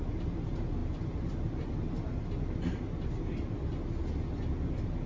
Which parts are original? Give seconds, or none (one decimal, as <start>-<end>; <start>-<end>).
0.0-5.1